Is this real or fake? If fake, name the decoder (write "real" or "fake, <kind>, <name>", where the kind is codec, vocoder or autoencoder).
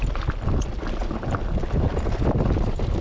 real